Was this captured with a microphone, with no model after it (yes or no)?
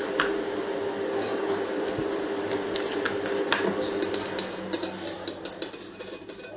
yes